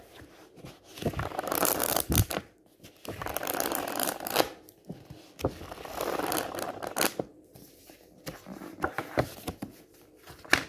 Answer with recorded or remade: remade